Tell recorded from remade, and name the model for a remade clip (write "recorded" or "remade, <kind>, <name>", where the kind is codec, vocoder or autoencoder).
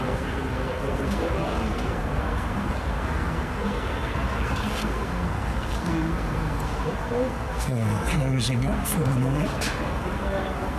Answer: remade, codec, SNAC